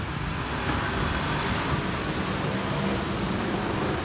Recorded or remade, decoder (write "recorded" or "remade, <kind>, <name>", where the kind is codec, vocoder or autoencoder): recorded